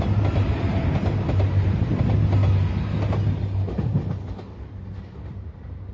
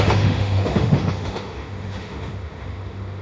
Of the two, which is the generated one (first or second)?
second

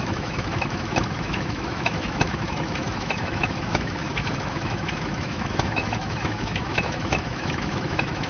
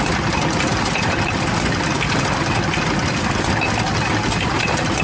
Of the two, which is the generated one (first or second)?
first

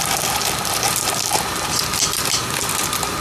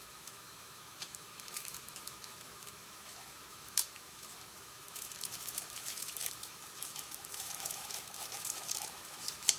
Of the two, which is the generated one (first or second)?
second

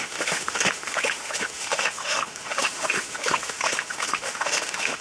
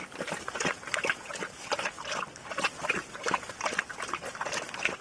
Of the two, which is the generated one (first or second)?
first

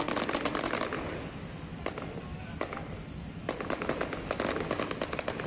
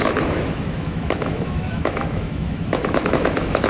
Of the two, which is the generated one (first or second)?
second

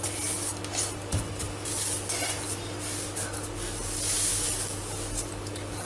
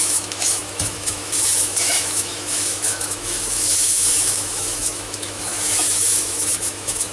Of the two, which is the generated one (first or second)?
second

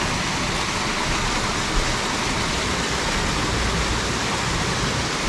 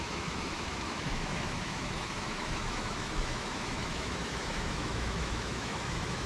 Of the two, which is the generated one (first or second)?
second